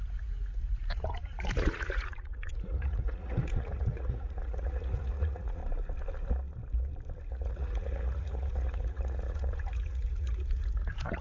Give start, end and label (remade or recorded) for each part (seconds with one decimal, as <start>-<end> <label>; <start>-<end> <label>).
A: 0.0-5.6 remade; 5.6-7.3 recorded; 7.3-11.2 remade